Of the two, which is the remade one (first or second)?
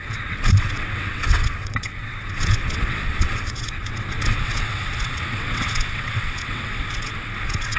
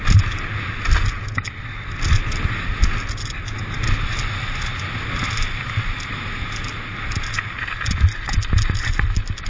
first